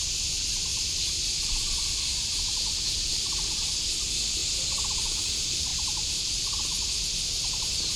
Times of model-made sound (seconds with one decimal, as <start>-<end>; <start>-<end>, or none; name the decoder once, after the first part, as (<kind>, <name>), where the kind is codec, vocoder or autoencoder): 0.7-3.2 (vocoder, BigVGAN v2); 5.7-6.4